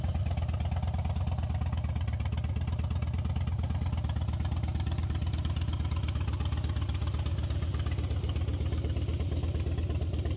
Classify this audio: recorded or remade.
recorded